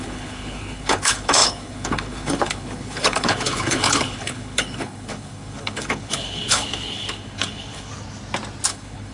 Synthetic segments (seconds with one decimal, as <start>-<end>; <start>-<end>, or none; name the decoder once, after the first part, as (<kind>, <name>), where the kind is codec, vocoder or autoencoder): 0.0-7.9 (codec, HILCodec); 8.7-9.1